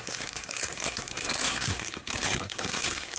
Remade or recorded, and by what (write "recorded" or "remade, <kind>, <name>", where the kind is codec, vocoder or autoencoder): remade, codec, SNAC